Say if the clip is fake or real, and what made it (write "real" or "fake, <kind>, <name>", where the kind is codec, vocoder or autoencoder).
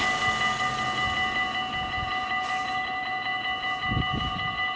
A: real